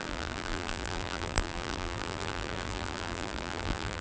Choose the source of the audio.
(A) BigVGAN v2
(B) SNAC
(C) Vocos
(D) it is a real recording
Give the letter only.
A